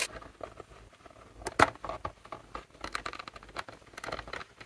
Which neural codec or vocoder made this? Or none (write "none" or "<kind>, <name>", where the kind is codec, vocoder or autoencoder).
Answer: none